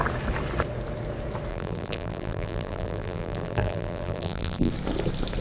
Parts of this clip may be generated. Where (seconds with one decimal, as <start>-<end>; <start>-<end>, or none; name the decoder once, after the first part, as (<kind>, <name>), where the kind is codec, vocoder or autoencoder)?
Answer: 1.5-4.7 (vocoder, BigVGAN v2)